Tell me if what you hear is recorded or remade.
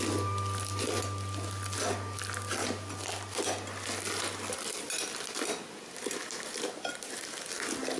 recorded